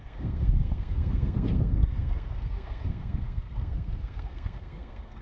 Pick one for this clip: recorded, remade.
remade